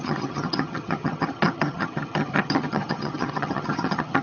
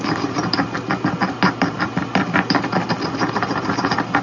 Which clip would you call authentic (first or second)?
second